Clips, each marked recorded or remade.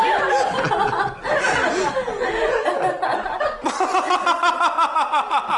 recorded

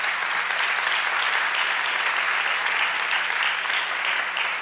recorded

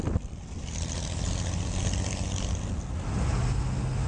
recorded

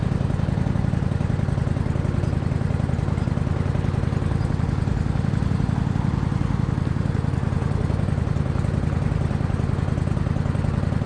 recorded